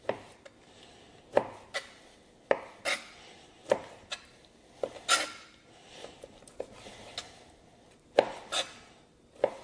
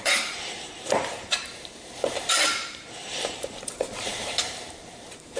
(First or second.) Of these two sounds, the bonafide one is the first